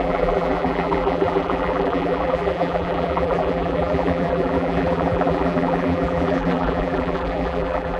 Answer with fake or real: fake